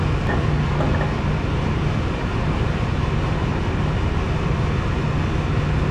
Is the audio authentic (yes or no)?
yes